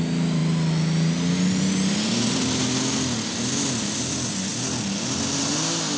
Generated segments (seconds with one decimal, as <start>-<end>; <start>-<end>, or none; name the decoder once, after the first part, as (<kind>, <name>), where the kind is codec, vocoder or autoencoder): none